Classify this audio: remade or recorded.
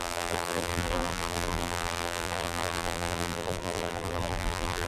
remade